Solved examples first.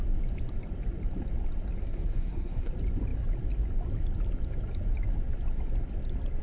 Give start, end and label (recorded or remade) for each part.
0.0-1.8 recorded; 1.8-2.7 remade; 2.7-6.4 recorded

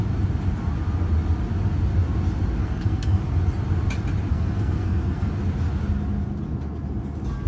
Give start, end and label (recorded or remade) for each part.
0.0-2.6 recorded; 2.6-3.3 remade; 3.3-4.3 recorded; 4.3-5.3 remade; 5.3-7.5 recorded

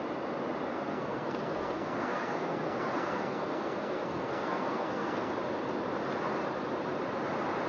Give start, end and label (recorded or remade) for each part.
0.0-0.7 recorded; 0.7-5.3 remade; 5.3-7.7 recorded

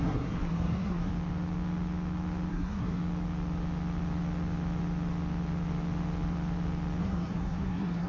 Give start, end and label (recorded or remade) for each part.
0.0-1.1 remade; 1.1-2.5 recorded; 2.5-3.0 remade; 3.0-7.0 recorded; 7.0-8.1 remade

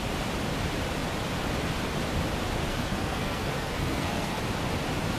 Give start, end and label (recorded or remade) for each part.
0.0-2.7 recorded; 2.7-4.4 remade; 4.4-5.2 recorded